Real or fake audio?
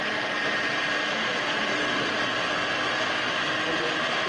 real